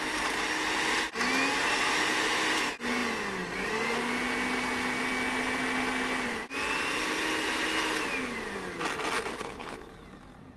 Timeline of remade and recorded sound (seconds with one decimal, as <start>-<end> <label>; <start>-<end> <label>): 0.0-9.3 recorded; 9.3-9.9 remade; 9.9-10.6 recorded